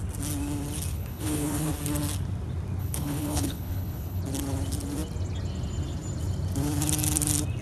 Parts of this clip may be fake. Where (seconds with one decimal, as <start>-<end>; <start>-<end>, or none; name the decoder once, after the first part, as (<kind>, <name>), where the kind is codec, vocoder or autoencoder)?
0.9-1.7 (codec, HILCodec); 2.8-4.2